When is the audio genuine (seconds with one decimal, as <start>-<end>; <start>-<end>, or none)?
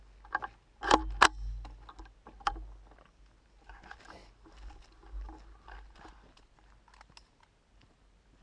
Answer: 0.0-8.4